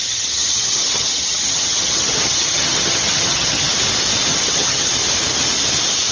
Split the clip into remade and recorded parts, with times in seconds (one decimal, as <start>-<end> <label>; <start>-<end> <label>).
0.0-3.7 remade; 3.7-4.3 recorded; 4.3-4.9 remade; 4.9-6.1 recorded